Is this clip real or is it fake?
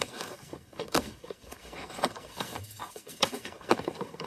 fake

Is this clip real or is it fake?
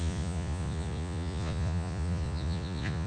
fake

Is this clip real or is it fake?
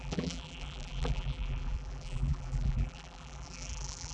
fake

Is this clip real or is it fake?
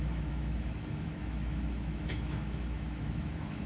fake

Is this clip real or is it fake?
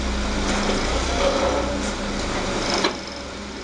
real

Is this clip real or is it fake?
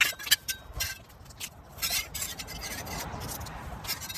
real